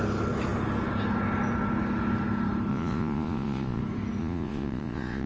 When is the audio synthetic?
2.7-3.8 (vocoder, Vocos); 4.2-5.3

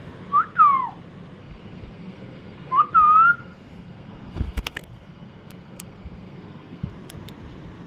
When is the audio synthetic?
1.4-2.9 (codec, SNAC); 3.4-6.9

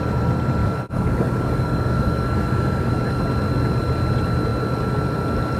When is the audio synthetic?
0.6-3.2 (codec, DAC)

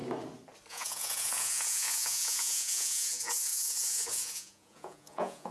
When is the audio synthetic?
0.7-5.5 (vocoder, Vocos)

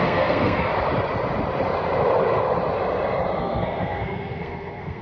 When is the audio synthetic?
0.0-0.7 (codec, SNAC); 3.4-5.0